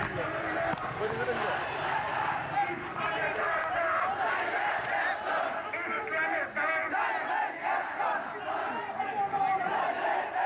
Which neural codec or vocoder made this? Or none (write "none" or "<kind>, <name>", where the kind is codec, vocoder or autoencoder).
none